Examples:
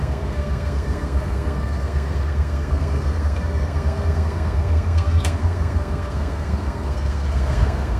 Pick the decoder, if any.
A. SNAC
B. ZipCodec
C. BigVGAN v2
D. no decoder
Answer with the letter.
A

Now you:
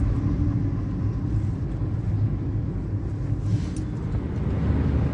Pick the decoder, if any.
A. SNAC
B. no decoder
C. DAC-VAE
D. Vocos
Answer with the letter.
B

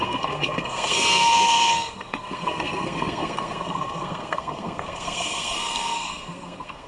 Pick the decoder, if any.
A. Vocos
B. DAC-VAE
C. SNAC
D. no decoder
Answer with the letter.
C